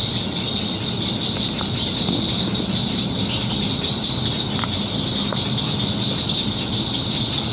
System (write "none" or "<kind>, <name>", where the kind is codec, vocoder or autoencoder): none